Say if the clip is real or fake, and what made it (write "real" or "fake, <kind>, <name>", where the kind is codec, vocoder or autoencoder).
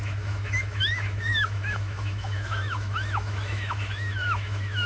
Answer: fake, autoencoder, DAC-VAE